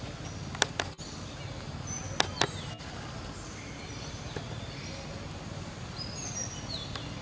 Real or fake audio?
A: real